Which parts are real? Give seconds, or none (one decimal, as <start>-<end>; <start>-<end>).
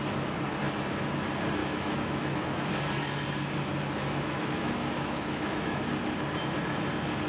0.0-1.6; 2.7-4.0; 5.8-7.3